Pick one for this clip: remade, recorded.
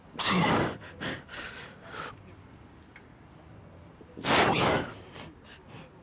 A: recorded